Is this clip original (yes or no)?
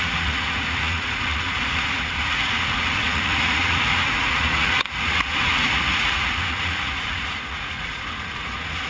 no